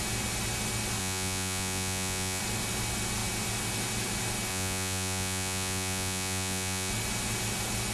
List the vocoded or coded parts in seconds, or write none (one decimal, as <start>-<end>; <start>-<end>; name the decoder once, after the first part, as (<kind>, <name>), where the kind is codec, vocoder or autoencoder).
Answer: 1.0-2.4 (vocoder, Vocos); 4.5-6.9